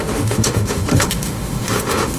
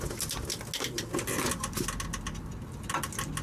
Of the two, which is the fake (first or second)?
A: first